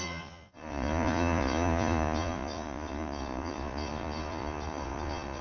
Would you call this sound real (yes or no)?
no